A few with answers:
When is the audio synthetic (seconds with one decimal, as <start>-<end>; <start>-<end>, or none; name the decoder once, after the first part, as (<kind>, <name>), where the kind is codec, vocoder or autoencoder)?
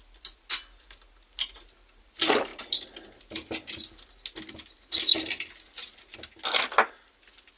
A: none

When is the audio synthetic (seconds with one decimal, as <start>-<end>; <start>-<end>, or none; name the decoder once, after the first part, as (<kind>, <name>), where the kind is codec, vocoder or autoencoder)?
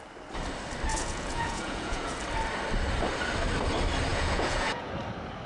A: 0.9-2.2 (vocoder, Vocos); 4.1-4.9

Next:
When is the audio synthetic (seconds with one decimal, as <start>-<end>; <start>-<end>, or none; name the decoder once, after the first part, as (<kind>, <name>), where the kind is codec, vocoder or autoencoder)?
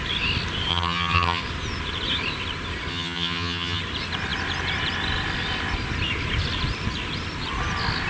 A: 0.7-1.4 (vocoder, HiFi-GAN); 2.9-3.8